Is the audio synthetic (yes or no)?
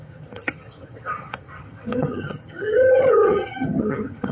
yes